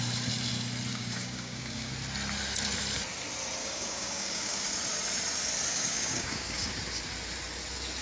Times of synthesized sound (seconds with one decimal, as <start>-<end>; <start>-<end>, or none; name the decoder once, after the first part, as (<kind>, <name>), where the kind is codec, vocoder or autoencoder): 0.9-1.9 (codec, DAC); 3.6-4.7; 5.7-6.7